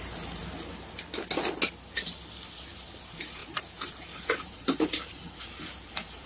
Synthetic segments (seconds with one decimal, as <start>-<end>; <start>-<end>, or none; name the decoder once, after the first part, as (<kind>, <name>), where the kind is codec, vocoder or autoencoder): 0.0-0.4 (vocoder, BigVGAN v2); 2.7-6.3